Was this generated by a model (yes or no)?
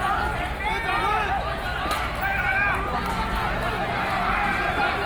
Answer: no